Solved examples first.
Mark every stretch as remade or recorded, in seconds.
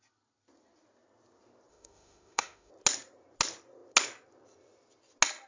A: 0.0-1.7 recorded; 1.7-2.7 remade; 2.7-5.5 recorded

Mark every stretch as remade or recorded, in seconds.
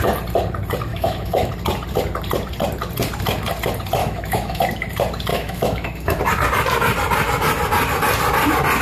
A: 0.0-0.9 recorded; 0.9-1.5 remade; 1.5-4.0 recorded; 4.0-4.6 remade; 4.6-5.3 recorded; 5.3-6.2 remade; 6.2-8.8 recorded